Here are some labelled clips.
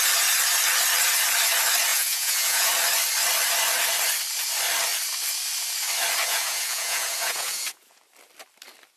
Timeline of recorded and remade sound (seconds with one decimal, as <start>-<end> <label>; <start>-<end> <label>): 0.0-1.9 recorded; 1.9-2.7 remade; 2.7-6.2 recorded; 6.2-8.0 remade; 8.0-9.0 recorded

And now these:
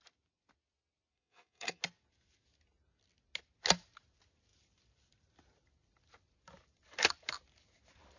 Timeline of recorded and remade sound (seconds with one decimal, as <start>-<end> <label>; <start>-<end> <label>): 0.0-1.1 recorded; 1.1-1.8 remade; 1.8-8.2 recorded

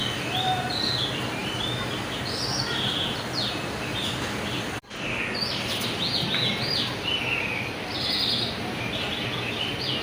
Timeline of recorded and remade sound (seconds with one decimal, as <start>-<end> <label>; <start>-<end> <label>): 0.0-10.0 recorded

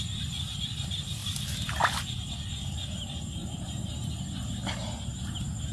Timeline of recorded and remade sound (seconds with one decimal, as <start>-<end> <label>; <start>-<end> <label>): 0.0-1.2 recorded; 1.2-2.3 remade; 2.3-3.4 recorded; 3.4-4.1 remade; 4.1-5.7 recorded